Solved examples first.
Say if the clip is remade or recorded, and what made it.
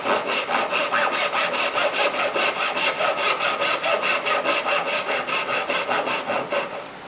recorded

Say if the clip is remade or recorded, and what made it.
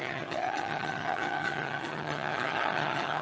remade, vocoder, HiFi-GAN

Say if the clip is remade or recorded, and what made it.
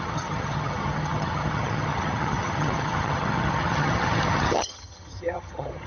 remade, vocoder, HiFi-GAN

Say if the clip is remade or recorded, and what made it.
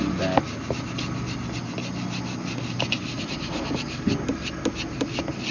recorded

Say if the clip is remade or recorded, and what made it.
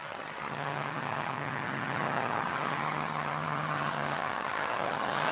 remade, vocoder, HiFi-GAN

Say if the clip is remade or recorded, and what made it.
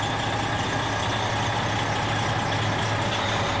recorded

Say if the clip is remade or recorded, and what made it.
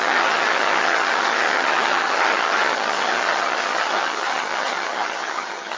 remade, vocoder, HiFi-GAN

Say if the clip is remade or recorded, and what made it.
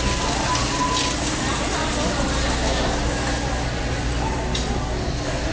recorded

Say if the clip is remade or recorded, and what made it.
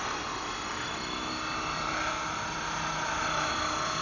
recorded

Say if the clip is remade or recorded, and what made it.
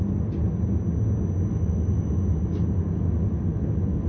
recorded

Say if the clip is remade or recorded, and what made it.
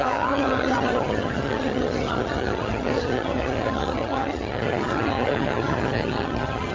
remade, vocoder, HiFi-GAN